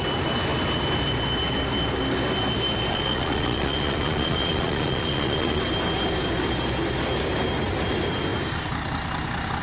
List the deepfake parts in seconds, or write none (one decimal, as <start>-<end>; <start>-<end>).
2.9-5.6